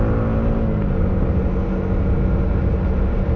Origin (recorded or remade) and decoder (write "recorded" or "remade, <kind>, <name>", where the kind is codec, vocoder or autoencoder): recorded